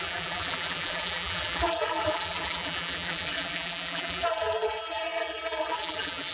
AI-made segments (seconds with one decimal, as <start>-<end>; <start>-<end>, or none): 0.0-6.3